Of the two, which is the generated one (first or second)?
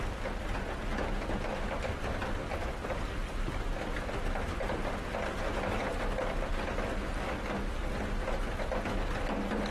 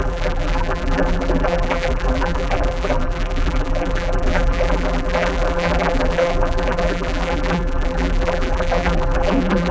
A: second